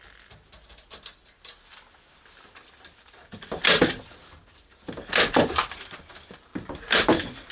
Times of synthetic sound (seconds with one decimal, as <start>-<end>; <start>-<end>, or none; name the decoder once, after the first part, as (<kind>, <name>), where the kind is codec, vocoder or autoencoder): none